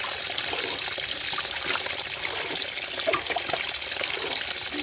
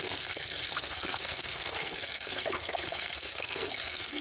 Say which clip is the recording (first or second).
first